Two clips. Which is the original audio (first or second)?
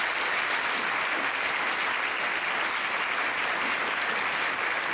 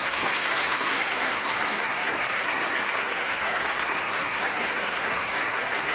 first